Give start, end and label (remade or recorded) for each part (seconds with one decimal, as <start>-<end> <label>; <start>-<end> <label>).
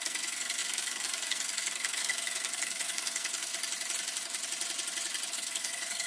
0.0-3.5 remade; 3.5-5.3 recorded; 5.3-6.1 remade